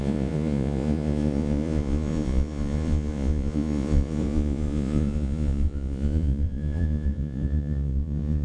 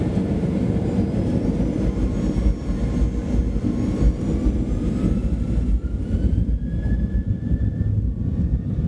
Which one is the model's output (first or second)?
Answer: first